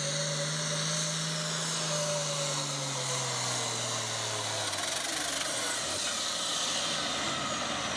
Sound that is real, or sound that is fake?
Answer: real